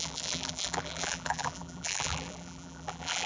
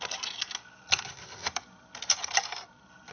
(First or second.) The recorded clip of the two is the second